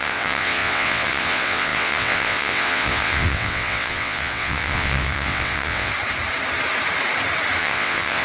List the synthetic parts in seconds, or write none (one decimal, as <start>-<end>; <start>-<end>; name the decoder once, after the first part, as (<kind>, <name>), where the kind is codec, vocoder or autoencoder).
0.0-5.9 (vocoder, WaveNeXt); 7.6-8.2